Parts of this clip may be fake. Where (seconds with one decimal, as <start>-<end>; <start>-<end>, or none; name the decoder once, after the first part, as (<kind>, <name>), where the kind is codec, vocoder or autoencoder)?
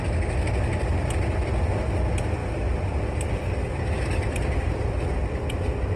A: none